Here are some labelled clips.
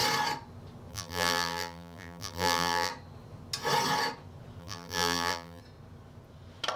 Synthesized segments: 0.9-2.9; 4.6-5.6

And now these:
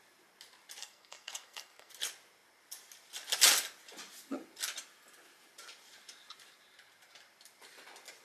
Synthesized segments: 0.8-1.9

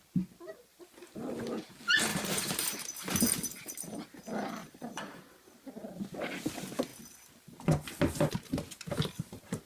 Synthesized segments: 2.1-3.1; 4.6-5.2

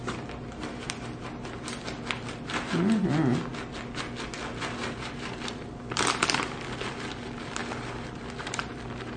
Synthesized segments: 4.8-5.8; 7.6-8.3

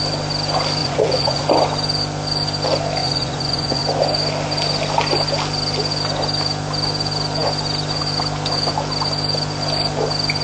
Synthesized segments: 0.8-1.4; 3.0-3.8